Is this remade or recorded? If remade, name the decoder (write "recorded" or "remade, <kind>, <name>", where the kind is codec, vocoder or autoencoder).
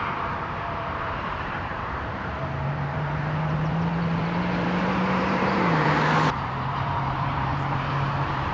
remade, vocoder, BigVGAN v2